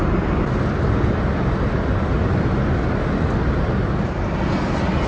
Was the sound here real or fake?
real